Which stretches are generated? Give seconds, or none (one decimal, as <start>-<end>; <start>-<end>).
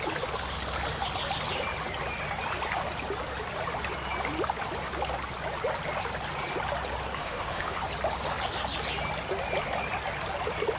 7.2-7.8